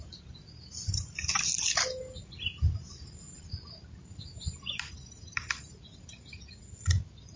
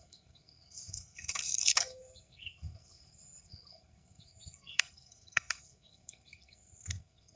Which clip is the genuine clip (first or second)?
first